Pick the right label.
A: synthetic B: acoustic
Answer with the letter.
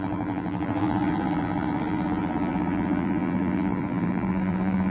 A